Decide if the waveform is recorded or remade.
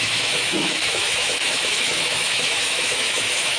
remade